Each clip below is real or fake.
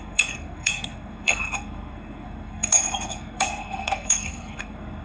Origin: fake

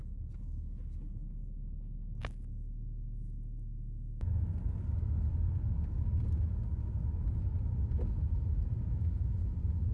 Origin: real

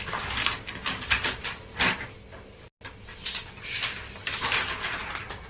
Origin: real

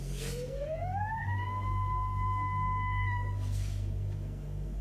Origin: fake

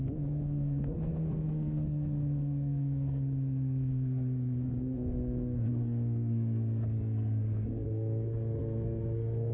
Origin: fake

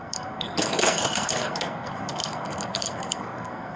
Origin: fake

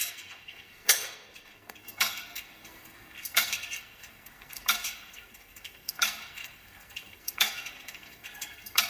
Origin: fake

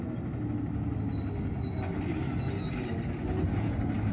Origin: real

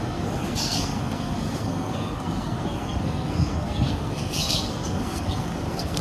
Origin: fake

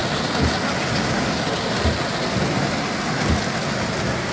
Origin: real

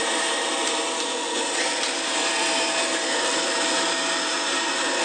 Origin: real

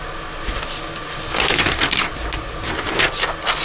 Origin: real